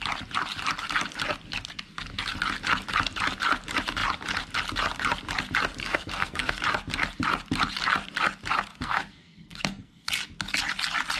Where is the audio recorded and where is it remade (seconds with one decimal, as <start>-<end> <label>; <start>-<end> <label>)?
0.0-5.8 recorded; 5.8-6.6 remade; 6.6-8.7 recorded; 8.7-10.1 remade; 10.1-11.2 recorded